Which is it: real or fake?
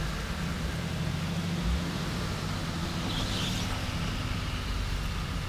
real